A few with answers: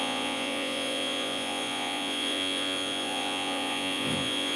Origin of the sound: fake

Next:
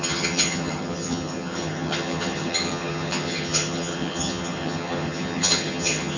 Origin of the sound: fake